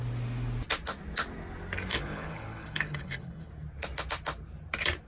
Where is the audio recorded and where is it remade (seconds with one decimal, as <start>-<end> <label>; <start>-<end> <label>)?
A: 0.0-1.9 recorded; 1.9-3.5 remade; 3.5-5.1 recorded